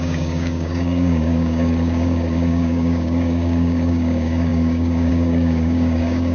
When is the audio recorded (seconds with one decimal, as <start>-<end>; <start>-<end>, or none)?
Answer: none